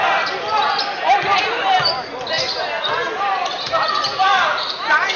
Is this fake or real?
real